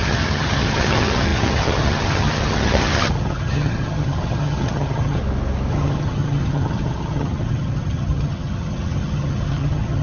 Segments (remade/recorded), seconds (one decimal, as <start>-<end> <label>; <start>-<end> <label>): 0.0-5.2 remade; 5.2-5.7 recorded; 5.7-10.0 remade